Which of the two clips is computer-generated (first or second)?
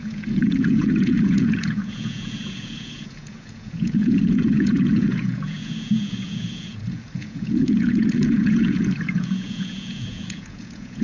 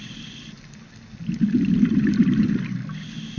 first